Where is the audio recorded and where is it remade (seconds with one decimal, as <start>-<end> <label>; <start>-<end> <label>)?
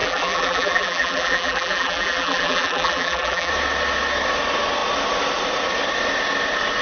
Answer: 0.0-3.5 remade; 3.5-6.8 recorded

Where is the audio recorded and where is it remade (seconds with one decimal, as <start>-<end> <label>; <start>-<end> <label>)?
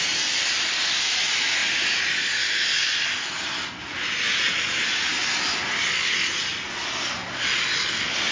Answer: 0.0-8.3 recorded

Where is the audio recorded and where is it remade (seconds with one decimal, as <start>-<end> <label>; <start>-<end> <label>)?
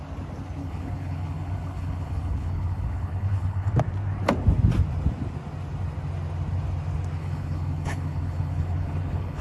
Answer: 0.0-0.6 recorded; 0.6-3.7 remade; 3.7-7.2 recorded; 7.2-9.4 remade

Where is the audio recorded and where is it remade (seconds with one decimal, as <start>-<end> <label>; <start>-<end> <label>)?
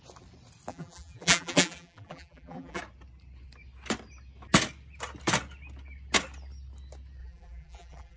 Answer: 0.0-0.7 recorded; 0.7-2.8 remade; 2.8-7.2 recorded; 7.2-8.2 remade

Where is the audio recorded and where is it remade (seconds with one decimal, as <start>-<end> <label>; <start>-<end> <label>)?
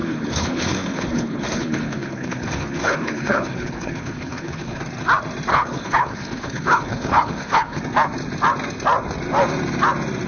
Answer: 0.0-4.8 remade; 4.8-5.5 recorded; 5.5-7.8 remade; 7.8-10.3 recorded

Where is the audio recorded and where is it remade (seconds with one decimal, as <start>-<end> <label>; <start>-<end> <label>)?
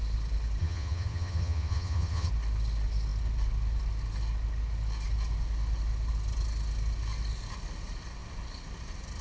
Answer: 0.0-0.6 recorded; 0.6-2.3 remade; 2.3-9.2 recorded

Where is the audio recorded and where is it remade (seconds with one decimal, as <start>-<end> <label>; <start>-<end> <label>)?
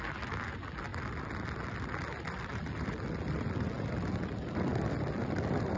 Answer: 0.0-5.8 recorded